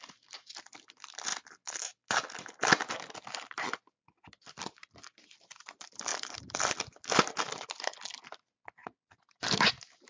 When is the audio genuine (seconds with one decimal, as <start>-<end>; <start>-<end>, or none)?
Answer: 0.0-10.1